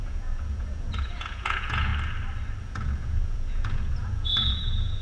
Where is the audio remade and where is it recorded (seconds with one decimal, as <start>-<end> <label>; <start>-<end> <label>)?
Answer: 0.0-1.9 remade; 1.9-2.6 recorded; 2.6-5.0 remade